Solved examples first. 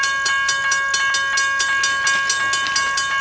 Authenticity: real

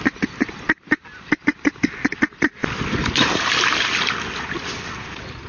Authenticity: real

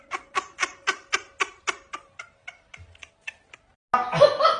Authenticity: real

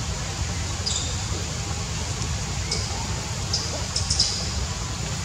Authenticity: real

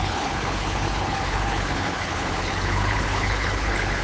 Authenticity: fake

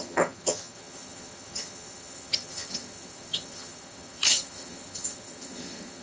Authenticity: fake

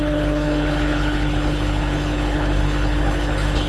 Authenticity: fake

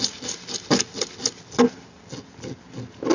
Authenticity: real